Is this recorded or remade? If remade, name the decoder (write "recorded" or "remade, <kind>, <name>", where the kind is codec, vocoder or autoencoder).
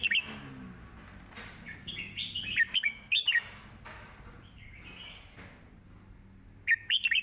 recorded